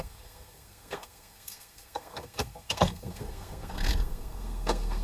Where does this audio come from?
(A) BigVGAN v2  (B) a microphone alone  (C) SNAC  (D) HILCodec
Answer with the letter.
C